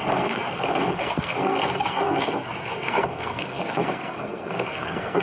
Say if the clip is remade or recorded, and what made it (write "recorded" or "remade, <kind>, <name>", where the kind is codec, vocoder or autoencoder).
remade, codec, SNAC